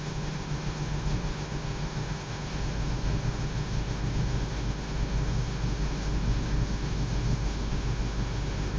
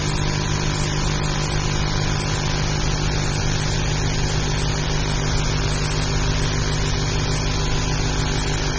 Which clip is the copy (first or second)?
first